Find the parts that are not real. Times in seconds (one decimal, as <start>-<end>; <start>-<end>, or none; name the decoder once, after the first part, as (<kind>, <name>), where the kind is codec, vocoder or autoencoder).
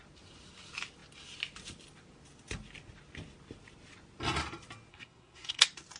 4.9-5.6 (codec, SNAC)